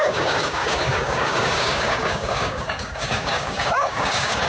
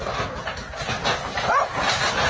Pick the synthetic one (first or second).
first